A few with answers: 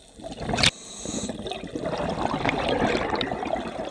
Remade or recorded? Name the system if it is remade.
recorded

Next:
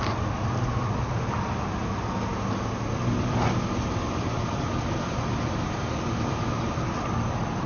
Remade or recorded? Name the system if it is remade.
recorded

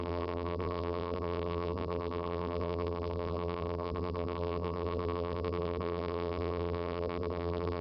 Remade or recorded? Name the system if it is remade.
remade, vocoder, BigVGAN v2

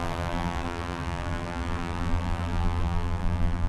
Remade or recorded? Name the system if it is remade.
remade, vocoder, BigVGAN v2